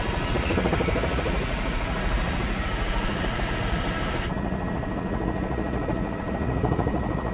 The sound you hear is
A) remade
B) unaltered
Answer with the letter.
A